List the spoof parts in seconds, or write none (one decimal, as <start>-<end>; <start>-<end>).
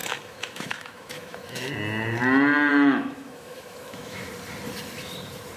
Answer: 0.0-1.7; 2.7-4.3